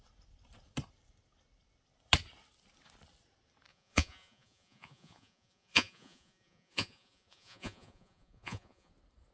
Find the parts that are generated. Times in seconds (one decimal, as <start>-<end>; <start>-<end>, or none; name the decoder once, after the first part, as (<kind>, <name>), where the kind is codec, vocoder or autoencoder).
3.7-8.9 (vocoder, Vocos)